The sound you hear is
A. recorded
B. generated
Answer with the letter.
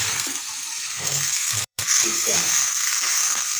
B